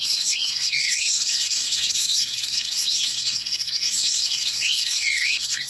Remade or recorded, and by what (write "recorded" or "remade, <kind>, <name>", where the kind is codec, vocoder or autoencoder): remade, codec, SNAC